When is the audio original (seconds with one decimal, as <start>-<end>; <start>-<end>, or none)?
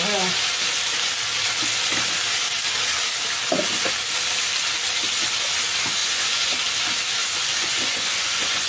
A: 0.0-6.0; 6.5-7.2